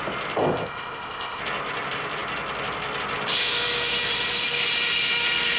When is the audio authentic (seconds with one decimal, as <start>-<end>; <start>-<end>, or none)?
0.0-0.4; 1.4-5.6